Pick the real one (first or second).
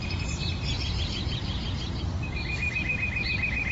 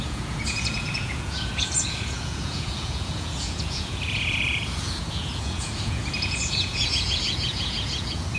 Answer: first